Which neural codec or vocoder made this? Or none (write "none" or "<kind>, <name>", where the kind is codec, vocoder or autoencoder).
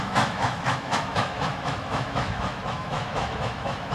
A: autoencoder, DAC-VAE